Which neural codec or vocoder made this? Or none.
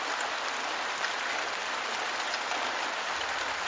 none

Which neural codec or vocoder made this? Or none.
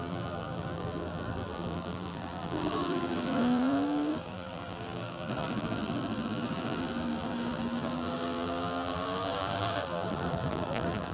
vocoder, BigVGAN v2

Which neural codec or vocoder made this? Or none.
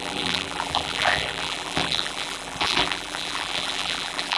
vocoder, BigVGAN v2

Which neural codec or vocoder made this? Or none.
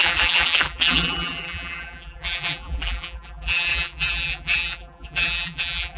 vocoder, BigVGAN v2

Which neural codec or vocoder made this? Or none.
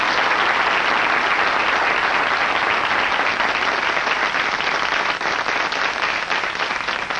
none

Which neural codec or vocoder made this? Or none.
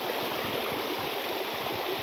none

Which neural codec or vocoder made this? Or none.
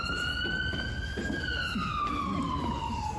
none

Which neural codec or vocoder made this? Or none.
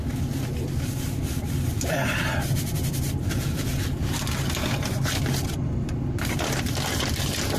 vocoder, BigVGAN v2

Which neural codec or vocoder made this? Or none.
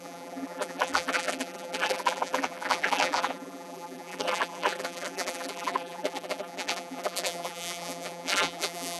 vocoder, BigVGAN v2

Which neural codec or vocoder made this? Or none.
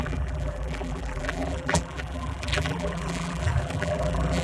vocoder, BigVGAN v2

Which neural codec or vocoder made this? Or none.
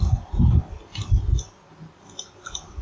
none